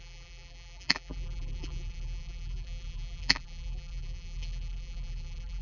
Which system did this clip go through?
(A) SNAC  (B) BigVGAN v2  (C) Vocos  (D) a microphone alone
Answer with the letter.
B